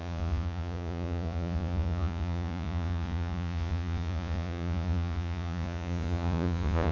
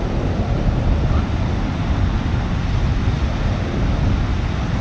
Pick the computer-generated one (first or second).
first